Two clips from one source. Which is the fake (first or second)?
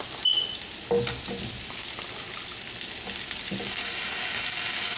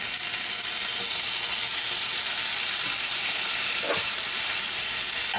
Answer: second